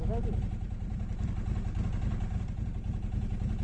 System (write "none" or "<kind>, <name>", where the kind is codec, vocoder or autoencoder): none